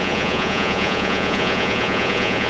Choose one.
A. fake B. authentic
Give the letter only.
A